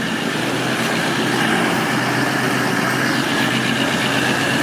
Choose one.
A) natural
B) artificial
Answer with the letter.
A